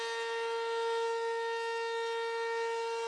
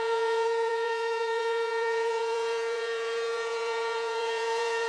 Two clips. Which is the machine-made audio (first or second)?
second